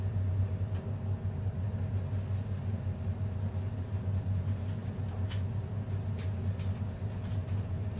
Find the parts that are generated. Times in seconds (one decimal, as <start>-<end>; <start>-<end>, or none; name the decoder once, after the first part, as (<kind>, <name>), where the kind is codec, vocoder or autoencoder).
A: none